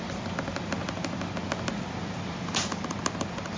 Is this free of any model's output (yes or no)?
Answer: yes